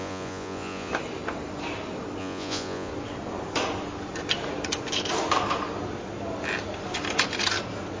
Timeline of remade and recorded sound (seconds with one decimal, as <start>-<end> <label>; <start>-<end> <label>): 0.0-0.9 remade; 0.9-2.2 recorded; 2.2-2.9 remade; 2.9-8.0 recorded